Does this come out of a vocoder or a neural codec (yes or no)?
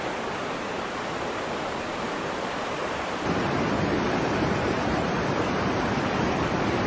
yes